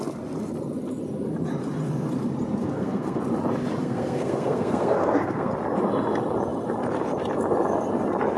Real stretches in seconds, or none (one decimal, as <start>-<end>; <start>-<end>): 0.0-2.6; 3.2-3.8; 5.5-8.4